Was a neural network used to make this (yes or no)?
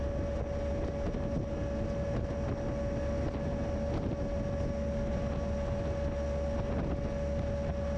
no